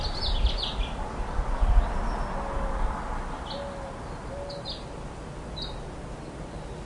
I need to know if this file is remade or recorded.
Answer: recorded